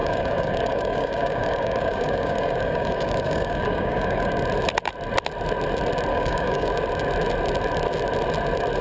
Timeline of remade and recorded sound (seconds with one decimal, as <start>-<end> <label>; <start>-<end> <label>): 0.0-4.3 remade; 4.3-6.1 recorded; 6.1-6.7 remade; 6.7-8.8 recorded